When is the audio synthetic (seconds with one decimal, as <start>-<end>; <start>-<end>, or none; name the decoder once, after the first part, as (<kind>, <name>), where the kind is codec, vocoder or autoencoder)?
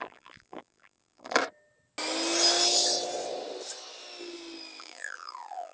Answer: 0.0-1.4 (vocoder, BigVGAN v2); 4.8-5.7